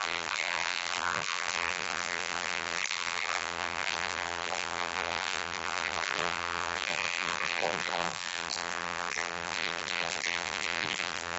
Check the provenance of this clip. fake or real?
fake